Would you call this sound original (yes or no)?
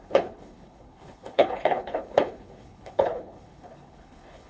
no